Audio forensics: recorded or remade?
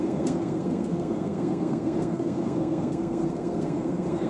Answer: remade